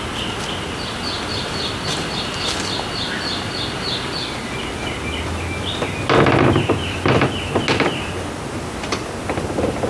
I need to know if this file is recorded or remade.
recorded